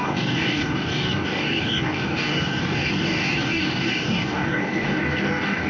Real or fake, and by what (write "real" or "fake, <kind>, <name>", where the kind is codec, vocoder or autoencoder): fake, codec, DAC